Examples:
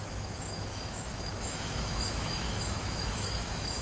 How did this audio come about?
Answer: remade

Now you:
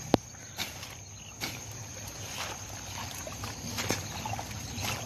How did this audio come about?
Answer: recorded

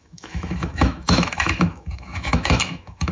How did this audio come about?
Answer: remade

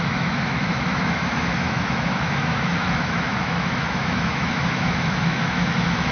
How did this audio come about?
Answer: remade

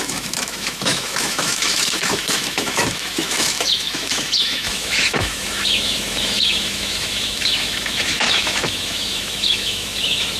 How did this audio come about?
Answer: remade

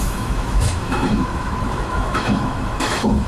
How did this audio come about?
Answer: remade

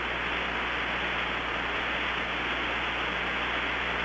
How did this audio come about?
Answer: recorded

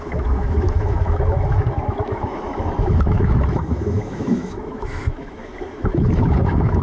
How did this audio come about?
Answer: remade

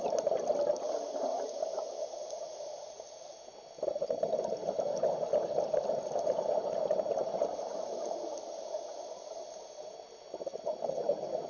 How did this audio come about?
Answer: recorded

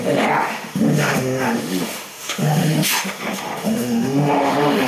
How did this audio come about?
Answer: remade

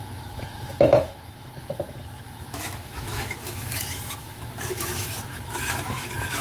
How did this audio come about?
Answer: remade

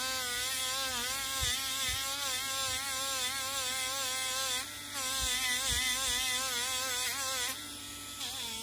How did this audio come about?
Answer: recorded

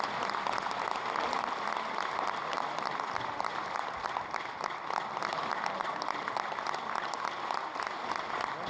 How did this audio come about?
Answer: recorded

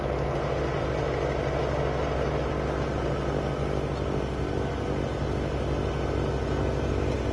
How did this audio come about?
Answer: recorded